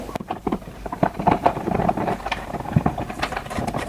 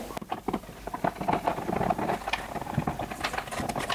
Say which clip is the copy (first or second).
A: first